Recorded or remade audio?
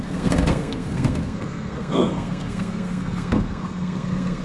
remade